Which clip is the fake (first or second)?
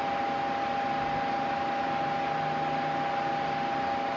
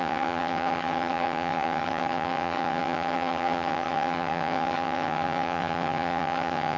second